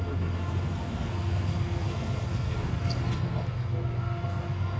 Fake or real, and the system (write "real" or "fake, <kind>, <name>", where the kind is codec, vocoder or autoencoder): fake, codec, SNAC